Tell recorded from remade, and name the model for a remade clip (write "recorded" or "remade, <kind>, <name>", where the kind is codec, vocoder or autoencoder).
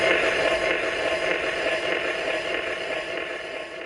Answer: recorded